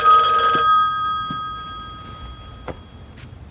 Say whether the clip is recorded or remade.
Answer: recorded